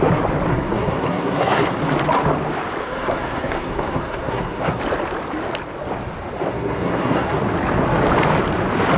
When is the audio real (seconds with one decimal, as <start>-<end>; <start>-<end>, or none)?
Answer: 0.0-0.5; 1.8-2.8; 4.8-6.5; 7.4-9.0